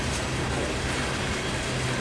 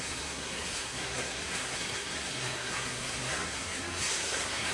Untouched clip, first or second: first